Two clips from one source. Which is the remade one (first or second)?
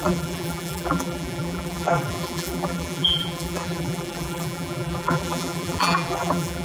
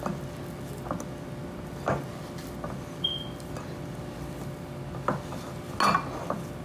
first